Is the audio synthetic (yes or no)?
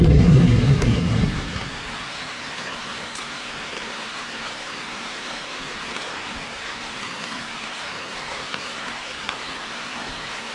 yes